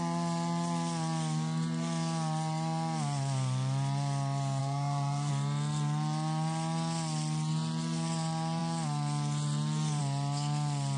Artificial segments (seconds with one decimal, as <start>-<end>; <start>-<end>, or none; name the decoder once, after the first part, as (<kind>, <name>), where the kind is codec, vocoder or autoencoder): 4.6-5.3 (codec, SNAC)